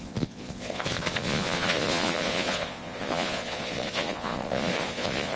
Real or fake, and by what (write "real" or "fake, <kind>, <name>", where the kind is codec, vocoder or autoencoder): fake, vocoder, Vocos